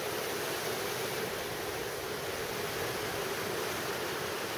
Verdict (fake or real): real